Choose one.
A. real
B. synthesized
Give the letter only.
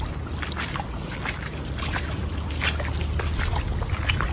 A